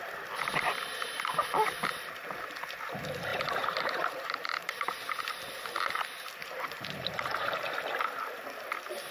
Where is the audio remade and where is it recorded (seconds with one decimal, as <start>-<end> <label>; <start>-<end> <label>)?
0.0-3.3 recorded; 3.3-4.9 remade; 4.9-6.4 recorded; 6.4-7.8 remade; 7.8-9.1 recorded